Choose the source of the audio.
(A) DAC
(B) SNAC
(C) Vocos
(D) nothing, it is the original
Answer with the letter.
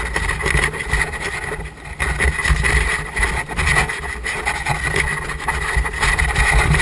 D